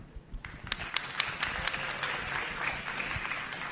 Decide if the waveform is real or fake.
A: real